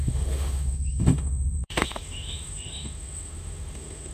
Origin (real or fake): fake